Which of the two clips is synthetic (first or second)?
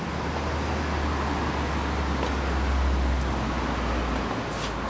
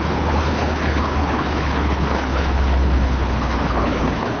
second